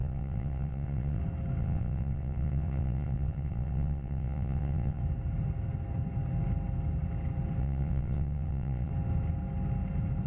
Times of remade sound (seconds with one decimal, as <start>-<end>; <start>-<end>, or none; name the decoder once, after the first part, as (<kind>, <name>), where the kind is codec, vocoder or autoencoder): 0.0-1.2 (vocoder, WaveNeXt); 1.6-5.0; 7.6-8.9